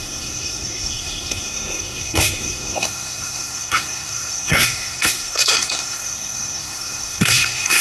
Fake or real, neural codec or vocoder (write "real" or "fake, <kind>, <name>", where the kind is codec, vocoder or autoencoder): fake, codec, SNAC